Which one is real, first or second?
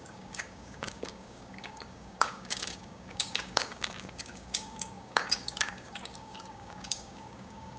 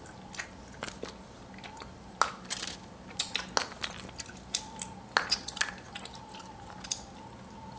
second